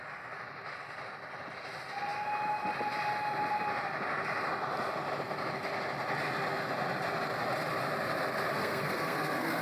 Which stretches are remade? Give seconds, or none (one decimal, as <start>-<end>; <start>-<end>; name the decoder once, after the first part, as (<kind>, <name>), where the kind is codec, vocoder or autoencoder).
8.5-9.6 (codec, SNAC)